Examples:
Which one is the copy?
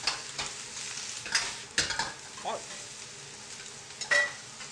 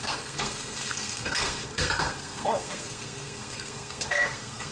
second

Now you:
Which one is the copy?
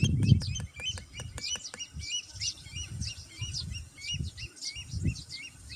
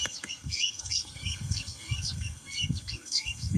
second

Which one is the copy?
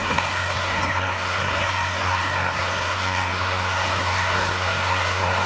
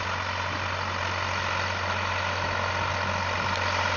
first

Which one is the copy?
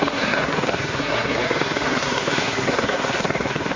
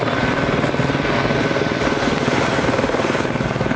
first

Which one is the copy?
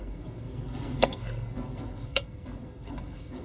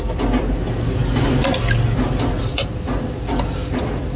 first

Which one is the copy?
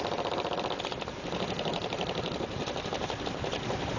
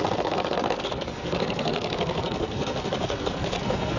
second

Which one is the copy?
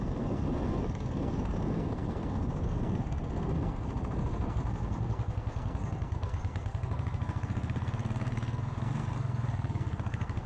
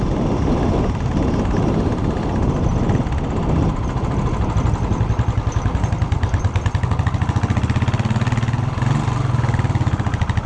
first